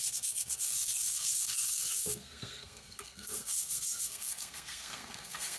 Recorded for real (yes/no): no